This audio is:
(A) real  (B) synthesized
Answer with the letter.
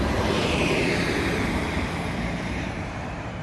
B